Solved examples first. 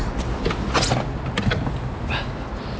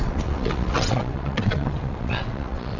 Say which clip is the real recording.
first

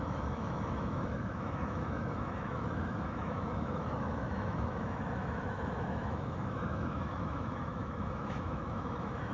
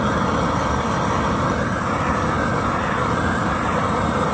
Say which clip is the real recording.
second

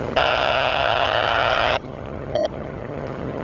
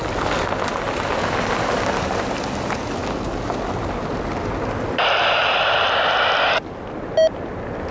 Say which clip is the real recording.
second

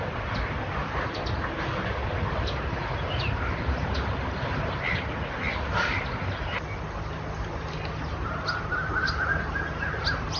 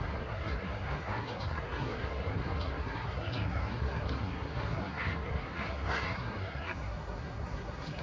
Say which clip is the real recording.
first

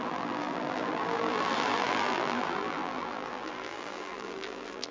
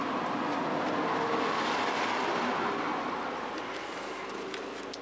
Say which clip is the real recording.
second